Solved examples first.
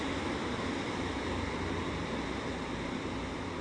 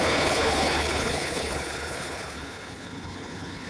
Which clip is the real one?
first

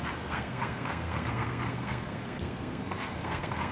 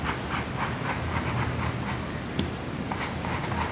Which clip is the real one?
second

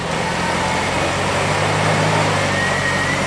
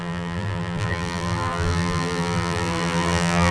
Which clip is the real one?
first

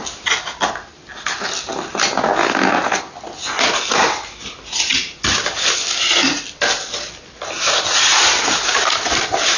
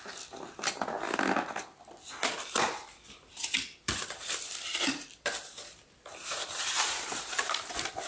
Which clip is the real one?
first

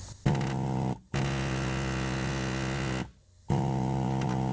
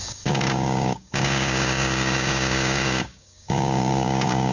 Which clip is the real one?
first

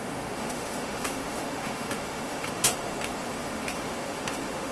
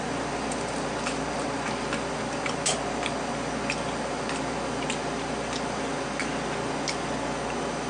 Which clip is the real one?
second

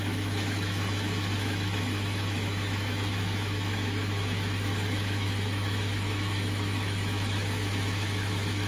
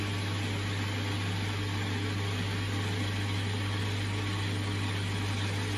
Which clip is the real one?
second